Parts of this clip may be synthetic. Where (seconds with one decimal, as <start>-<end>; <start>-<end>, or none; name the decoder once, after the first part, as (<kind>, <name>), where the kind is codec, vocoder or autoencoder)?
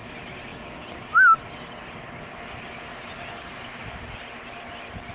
none